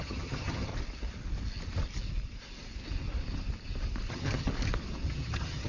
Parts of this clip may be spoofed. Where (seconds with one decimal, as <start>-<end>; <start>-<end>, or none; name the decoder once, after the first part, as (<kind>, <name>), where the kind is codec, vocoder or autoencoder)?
0.0-0.7 (vocoder, HiFi-GAN); 4.1-4.5; 5.1-5.7